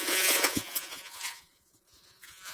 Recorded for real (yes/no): no